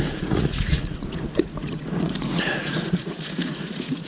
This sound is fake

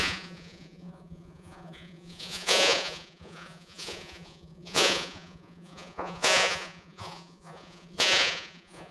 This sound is fake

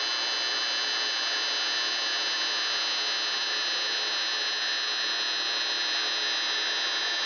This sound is real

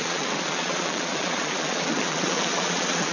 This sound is fake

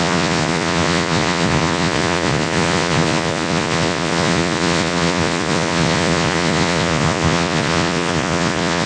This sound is fake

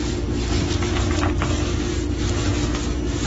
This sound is real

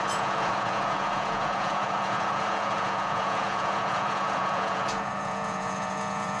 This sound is fake